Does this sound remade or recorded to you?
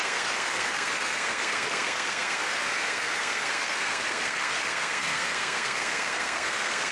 remade